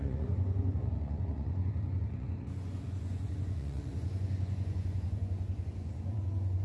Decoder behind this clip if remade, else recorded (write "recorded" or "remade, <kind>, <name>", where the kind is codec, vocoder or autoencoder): remade, vocoder, Vocos